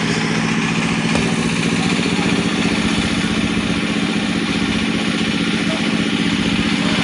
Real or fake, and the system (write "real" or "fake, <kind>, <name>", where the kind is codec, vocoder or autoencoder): real